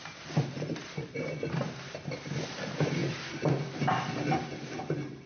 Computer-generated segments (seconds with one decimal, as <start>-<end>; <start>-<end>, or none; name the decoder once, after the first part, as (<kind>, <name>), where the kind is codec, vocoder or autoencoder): none